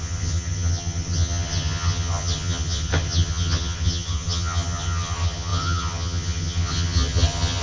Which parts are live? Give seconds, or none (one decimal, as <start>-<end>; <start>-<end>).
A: none